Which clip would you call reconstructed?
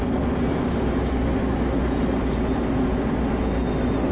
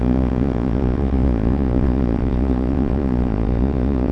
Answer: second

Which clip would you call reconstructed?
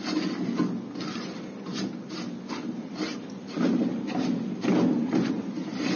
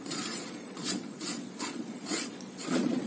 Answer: second